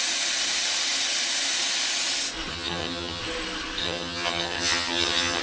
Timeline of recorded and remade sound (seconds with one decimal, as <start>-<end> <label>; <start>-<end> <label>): 0.0-2.5 recorded; 2.5-3.2 remade; 3.2-3.8 recorded; 3.8-5.4 remade